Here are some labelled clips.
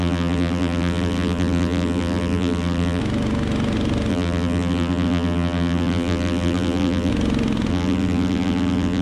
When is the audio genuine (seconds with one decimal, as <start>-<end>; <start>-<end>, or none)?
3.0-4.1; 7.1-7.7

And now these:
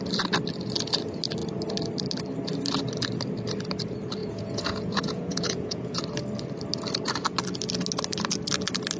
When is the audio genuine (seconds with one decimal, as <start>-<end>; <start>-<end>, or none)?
0.0-4.2; 6.0-9.0

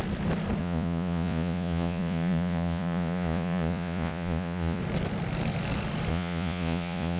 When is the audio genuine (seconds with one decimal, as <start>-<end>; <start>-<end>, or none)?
0.0-0.6; 4.8-6.1